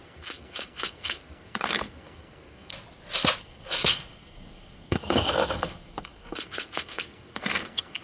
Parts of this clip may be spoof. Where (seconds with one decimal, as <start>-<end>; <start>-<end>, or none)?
0.0-2.7; 3.4-8.0